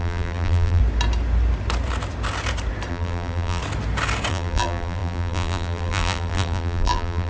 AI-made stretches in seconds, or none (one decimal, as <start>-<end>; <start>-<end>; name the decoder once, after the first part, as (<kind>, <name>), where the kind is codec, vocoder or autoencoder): 0.0-0.8 (vocoder, BigVGAN v2); 2.9-3.6; 4.3-7.3